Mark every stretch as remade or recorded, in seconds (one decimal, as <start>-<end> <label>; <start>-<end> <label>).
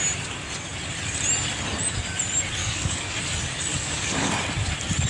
0.0-2.6 recorded; 2.6-3.2 remade; 3.2-3.7 recorded; 3.7-4.3 remade; 4.3-5.1 recorded